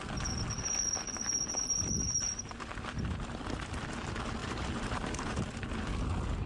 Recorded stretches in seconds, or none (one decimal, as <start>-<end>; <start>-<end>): 0.0-4.4; 5.5-6.5